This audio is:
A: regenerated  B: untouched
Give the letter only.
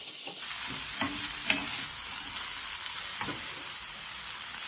B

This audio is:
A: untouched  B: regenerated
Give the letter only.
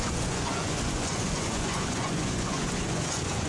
B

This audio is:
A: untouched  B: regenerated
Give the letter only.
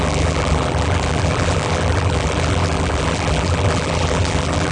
B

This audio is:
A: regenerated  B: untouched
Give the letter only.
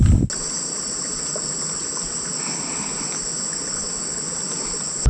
B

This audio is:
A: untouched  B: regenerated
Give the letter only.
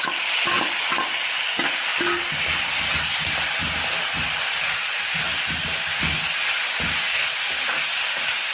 A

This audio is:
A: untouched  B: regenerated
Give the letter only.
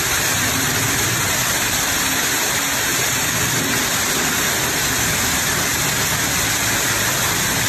A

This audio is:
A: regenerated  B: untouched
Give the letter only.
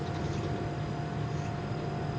B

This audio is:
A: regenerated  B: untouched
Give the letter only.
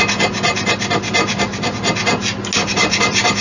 B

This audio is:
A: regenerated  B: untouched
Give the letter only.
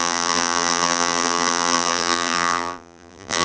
A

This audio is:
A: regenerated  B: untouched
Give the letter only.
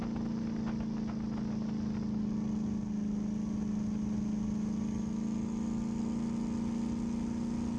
B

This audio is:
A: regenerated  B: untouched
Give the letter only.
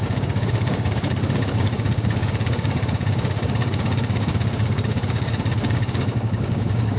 A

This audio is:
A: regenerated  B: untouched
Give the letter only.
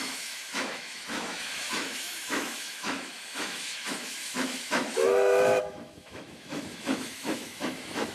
A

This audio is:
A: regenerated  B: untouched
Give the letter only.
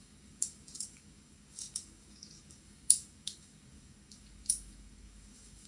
A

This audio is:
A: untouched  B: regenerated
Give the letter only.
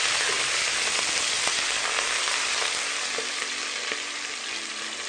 A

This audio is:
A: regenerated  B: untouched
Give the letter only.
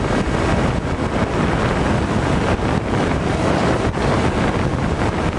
B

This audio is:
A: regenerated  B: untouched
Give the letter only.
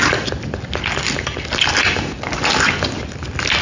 B